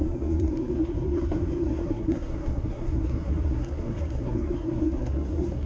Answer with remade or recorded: remade